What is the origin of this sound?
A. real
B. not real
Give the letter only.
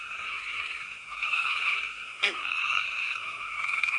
B